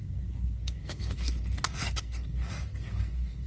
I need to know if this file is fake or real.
fake